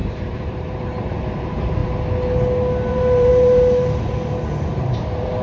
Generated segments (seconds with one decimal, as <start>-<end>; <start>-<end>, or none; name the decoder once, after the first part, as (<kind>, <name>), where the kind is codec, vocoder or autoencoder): 0.0-1.8 (vocoder, BigVGAN v2); 2.9-5.4